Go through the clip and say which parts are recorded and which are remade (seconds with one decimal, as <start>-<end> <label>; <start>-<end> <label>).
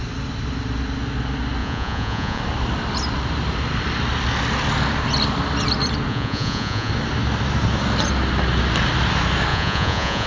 0.0-1.6 recorded; 1.6-2.4 remade; 2.4-6.1 recorded; 6.1-6.9 remade; 6.9-9.5 recorded; 9.5-10.3 remade